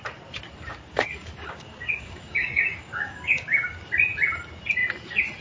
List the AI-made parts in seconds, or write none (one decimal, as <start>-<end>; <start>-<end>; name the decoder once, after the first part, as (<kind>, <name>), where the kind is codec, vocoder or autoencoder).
0.7-3.9 (codec, DAC)